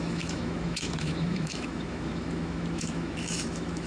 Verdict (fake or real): fake